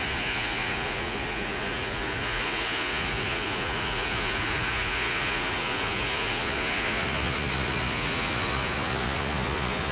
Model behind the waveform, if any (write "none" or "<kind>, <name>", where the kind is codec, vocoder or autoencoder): vocoder, Vocos